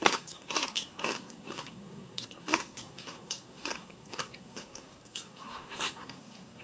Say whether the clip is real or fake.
fake